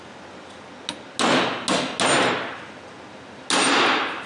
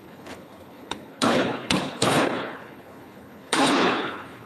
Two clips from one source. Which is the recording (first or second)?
first